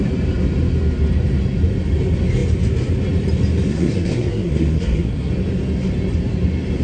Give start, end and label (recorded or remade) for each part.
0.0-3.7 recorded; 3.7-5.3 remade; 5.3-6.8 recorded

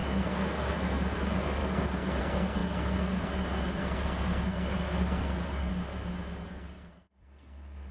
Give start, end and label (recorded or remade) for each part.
0.0-5.7 remade; 5.7-6.5 recorded; 6.5-7.9 remade

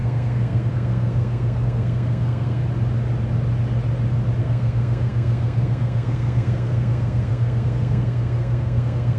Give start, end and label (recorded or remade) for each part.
0.0-2.6 remade; 2.6-4.4 recorded; 4.4-9.2 remade

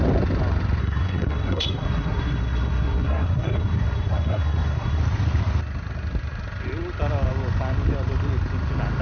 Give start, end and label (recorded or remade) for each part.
0.0-0.8 recorded; 0.8-5.0 remade; 5.0-9.0 recorded

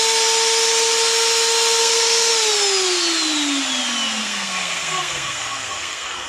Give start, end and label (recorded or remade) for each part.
0.0-1.8 recorded; 1.8-2.3 remade; 2.3-4.2 recorded; 4.2-6.3 remade

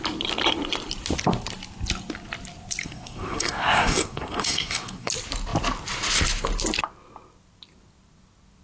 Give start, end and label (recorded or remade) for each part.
0.0-2.8 recorded; 2.8-5.1 remade; 5.1-8.6 recorded